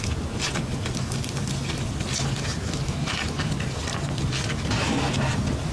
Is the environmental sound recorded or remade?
recorded